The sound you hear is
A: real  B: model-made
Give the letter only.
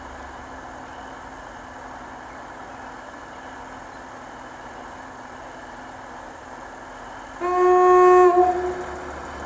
A